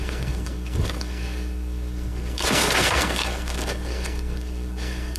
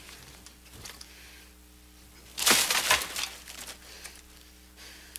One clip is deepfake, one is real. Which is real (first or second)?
second